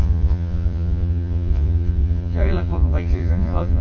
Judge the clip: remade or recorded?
remade